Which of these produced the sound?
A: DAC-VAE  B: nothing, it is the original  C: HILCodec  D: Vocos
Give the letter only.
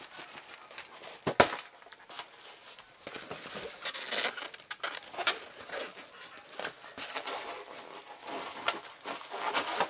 B